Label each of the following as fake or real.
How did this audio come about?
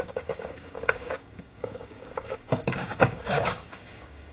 fake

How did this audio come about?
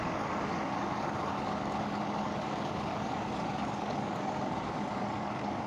fake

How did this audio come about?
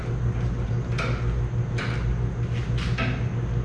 real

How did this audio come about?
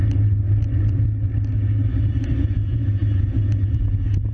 real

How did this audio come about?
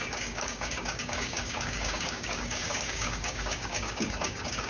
fake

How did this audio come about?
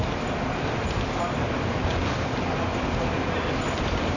real